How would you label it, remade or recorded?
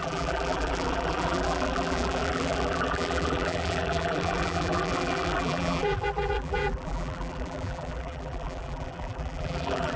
remade